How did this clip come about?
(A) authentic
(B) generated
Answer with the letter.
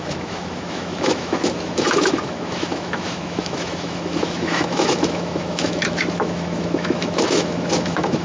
B